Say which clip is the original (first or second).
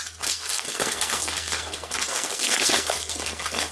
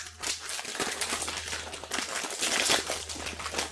second